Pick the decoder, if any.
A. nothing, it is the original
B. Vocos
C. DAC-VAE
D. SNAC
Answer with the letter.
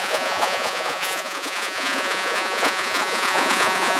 B